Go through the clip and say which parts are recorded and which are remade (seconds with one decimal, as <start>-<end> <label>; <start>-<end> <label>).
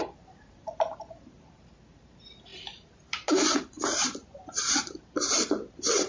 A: 0.0-6.1 remade